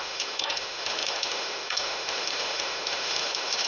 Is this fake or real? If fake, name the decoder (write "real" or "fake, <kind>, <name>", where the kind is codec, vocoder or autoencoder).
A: fake, autoencoder, DAC-VAE